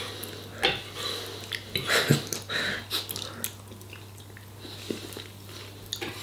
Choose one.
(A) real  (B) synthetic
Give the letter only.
A